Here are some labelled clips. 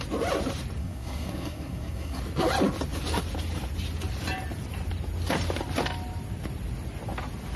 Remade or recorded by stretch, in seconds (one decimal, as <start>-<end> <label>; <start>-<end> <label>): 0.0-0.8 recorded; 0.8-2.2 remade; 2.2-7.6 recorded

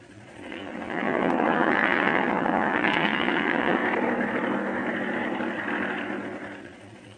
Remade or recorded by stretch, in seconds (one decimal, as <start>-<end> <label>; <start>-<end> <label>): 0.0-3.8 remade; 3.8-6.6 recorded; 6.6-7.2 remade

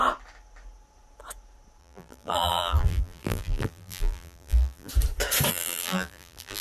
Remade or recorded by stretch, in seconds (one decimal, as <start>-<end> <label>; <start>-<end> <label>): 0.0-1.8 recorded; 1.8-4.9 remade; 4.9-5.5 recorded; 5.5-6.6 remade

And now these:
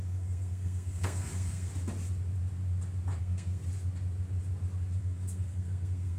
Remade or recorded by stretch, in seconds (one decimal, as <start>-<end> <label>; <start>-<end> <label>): 0.0-1.7 remade; 1.7-3.2 recorded; 3.2-3.6 remade; 3.6-5.0 recorded; 5.0-6.2 remade

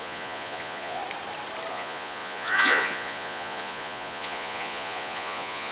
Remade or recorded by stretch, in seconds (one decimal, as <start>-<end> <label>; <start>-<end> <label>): 0.0-1.0 remade; 1.0-1.7 recorded; 1.7-5.7 remade

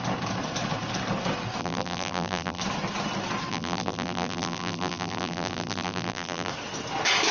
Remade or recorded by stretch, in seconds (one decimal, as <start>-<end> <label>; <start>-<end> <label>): 0.0-1.6 recorded; 1.6-2.6 remade; 2.6-3.5 recorded; 3.5-6.5 remade; 6.5-7.3 recorded